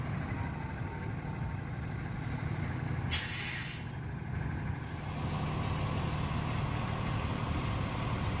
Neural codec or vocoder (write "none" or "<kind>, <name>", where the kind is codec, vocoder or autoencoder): none